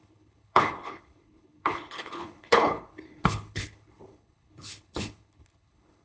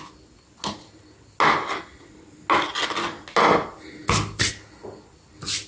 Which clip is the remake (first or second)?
first